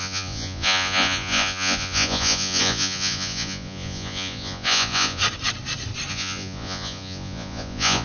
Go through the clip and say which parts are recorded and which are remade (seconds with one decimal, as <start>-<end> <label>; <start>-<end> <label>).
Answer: 0.0-5.2 remade; 5.2-6.1 recorded; 6.1-8.0 remade